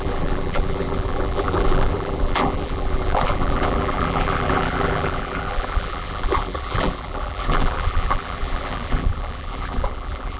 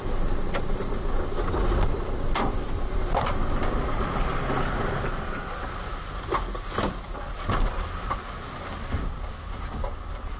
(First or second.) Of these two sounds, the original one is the second